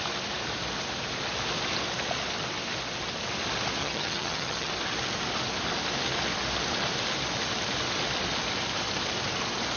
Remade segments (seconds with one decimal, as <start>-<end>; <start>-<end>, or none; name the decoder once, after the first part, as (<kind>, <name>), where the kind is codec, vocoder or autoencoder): 3.8-4.7 (vocoder, HiFi-GAN)